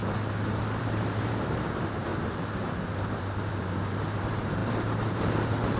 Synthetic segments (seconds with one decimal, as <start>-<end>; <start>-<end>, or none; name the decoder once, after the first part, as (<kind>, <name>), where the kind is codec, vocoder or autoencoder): 0.8-5.8 (vocoder, BigVGAN v2)